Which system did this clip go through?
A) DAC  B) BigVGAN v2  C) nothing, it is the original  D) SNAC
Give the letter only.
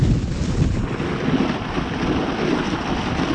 C